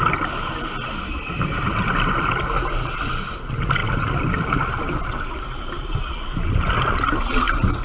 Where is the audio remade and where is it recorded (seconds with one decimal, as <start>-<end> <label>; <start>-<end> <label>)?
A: 0.0-7.8 recorded